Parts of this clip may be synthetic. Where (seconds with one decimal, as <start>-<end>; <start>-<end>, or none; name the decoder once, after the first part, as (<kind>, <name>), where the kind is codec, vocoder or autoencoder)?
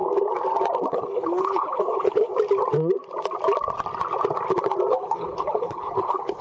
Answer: 0.9-2.3 (codec, HILCodec); 4.9-6.4